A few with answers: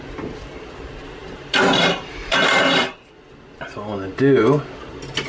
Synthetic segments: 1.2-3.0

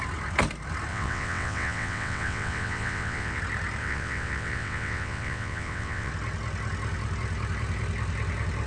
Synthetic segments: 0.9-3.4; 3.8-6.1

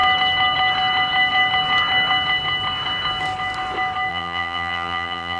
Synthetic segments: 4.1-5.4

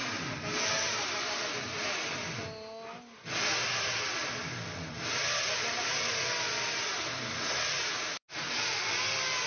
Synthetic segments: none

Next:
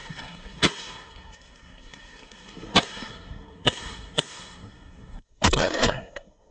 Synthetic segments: 0.0-6.5